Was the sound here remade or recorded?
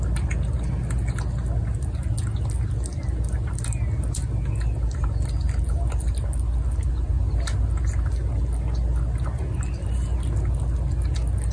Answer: recorded